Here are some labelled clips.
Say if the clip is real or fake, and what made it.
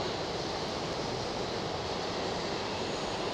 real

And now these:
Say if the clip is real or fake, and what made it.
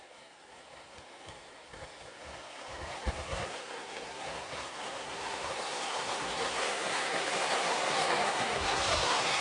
fake, codec, SNAC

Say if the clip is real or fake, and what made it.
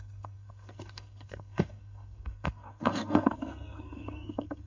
fake, codec, SNAC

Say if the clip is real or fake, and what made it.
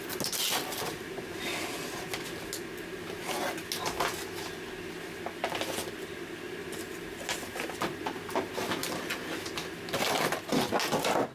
real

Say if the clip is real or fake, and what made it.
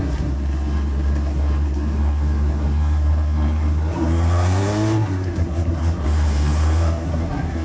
fake, codec, SNAC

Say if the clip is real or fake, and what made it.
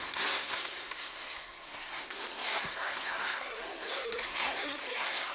fake, codec, SNAC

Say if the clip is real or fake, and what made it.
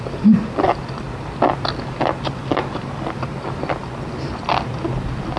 real